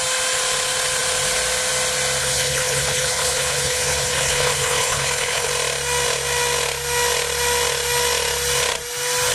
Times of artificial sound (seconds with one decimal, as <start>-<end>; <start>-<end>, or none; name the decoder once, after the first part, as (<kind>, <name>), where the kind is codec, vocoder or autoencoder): 2.2-5.5 (codec, HILCodec)